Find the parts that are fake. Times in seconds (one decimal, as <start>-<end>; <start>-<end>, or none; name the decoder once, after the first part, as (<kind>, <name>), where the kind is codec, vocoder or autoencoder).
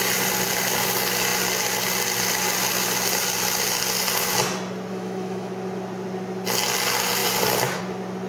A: 4.9-5.5 (autoencoder, DAC-VAE)